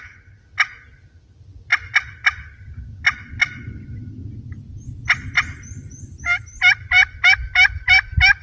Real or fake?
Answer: real